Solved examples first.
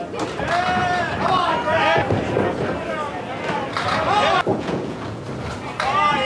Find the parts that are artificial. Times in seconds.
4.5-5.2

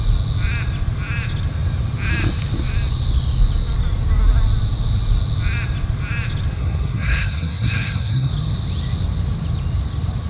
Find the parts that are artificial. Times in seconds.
6.5-8.3

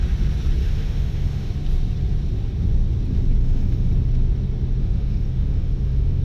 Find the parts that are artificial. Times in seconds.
0.6-1.5; 3.4-3.9; 4.8-6.2